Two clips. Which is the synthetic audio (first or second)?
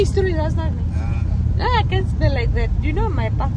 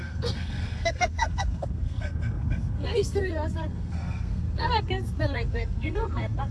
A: second